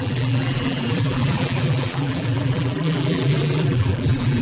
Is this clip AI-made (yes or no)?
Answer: yes